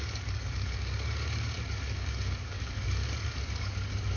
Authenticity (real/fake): fake